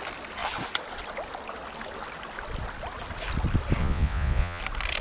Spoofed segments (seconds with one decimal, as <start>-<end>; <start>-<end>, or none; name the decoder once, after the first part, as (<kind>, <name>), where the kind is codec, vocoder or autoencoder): 3.8-4.6 (vocoder, Vocos)